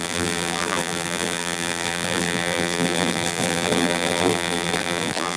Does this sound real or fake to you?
fake